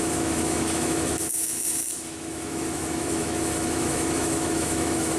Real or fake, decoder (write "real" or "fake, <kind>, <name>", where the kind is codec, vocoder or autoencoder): fake, autoencoder, DAC-VAE